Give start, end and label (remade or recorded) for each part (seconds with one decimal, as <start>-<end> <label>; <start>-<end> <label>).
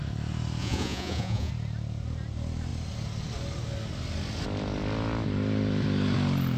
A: 0.0-0.6 recorded; 0.6-1.5 remade; 1.5-6.6 recorded